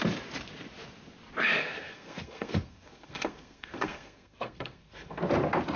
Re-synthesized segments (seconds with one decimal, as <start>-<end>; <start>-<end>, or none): 1.6-5.1

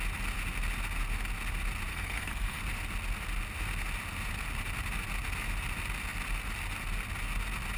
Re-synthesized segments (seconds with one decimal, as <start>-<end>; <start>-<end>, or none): 1.9-2.6

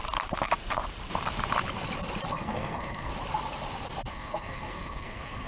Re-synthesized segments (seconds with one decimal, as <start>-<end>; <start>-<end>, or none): 2.3-3.1; 4.1-5.5

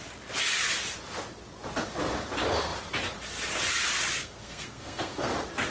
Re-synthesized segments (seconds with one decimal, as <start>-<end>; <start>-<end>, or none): 4.2-5.3

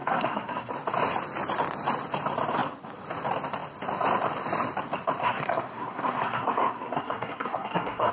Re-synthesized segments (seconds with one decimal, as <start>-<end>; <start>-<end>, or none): 0.0-0.7; 5.2-8.1

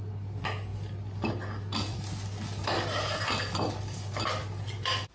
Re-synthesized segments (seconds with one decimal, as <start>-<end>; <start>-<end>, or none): none